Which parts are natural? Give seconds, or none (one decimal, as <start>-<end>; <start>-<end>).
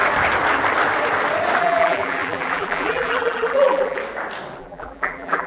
0.0-1.6; 4.0-4.6